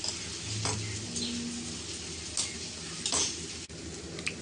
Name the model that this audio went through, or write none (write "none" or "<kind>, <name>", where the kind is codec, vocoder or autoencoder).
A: none